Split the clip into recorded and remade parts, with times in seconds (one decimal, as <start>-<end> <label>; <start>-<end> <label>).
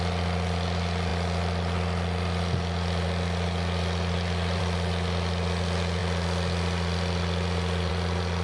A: 0.0-8.4 recorded